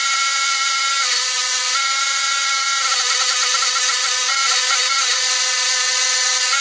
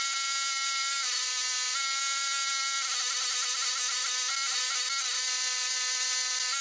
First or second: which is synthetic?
first